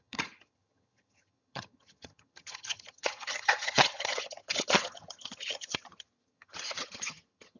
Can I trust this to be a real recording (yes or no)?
no